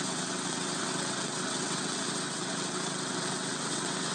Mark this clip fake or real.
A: fake